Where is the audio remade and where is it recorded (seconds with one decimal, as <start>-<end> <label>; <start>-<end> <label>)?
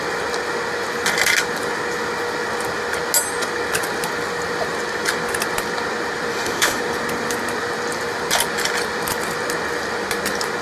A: 0.0-6.3 recorded; 6.3-6.8 remade; 6.8-10.6 recorded